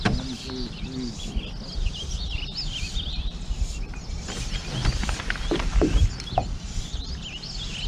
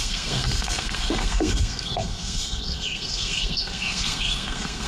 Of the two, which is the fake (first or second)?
second